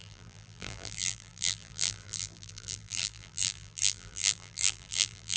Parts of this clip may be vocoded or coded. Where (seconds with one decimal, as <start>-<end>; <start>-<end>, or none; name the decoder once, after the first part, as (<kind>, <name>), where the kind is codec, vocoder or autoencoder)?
0.0-5.4 (vocoder, BigVGAN v2)